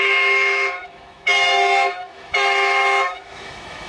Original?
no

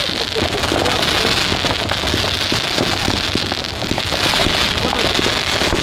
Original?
yes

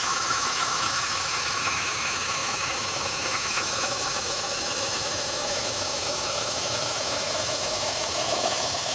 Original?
no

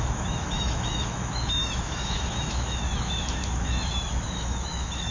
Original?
no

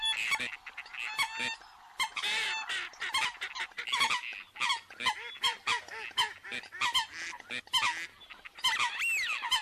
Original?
yes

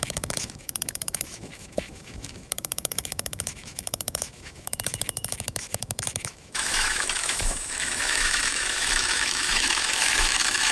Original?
no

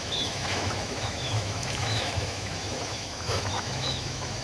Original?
no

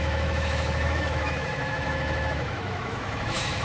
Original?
no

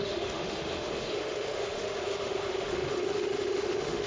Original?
no